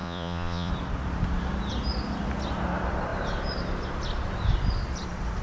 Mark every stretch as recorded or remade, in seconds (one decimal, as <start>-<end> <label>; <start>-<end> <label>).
0.0-0.7 remade; 0.7-5.4 recorded